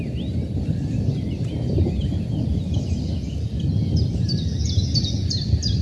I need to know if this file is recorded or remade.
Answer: recorded